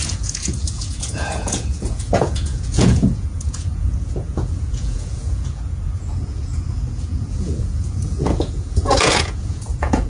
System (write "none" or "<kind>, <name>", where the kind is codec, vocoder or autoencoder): vocoder, Vocos